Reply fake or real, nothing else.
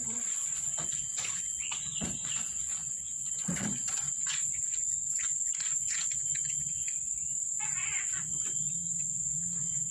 fake